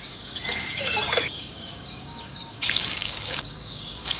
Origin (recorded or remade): remade